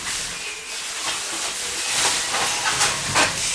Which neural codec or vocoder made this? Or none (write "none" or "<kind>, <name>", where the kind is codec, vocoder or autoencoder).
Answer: none